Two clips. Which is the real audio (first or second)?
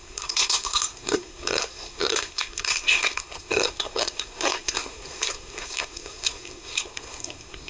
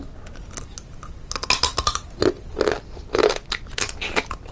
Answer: second